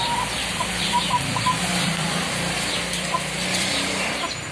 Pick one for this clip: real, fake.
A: fake